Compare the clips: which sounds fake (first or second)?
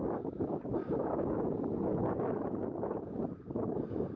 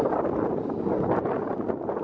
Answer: first